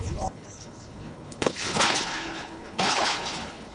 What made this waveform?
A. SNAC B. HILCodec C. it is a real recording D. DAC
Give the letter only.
B